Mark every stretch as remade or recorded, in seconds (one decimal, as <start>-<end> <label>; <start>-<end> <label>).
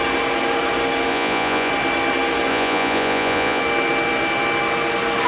0.0-1.1 recorded; 1.1-1.7 remade; 1.7-2.5 recorded; 2.5-3.6 remade; 3.6-5.3 recorded